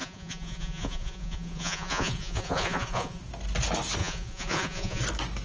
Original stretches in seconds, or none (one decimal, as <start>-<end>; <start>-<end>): 3.2-4.0; 5.0-5.4